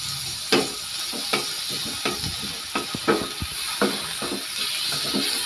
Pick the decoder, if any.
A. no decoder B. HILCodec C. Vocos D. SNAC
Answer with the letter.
A